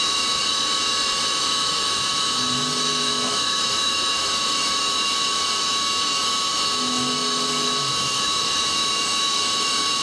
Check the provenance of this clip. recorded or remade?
remade